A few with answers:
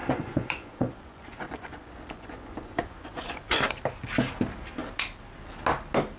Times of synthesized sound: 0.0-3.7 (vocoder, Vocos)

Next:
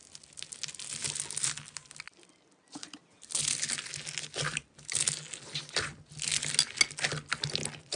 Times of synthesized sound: none

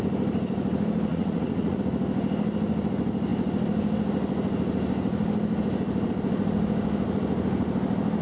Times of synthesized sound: 1.1-1.8 (vocoder, Vocos)

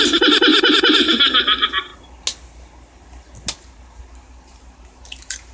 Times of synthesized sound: 0.0-1.9 (vocoder, BigVGAN v2); 4.0-5.5

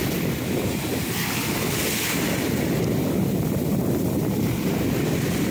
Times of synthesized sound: none